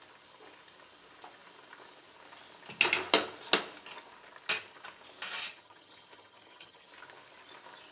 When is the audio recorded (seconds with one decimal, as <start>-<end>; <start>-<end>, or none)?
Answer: 0.0-5.4; 6.9-7.9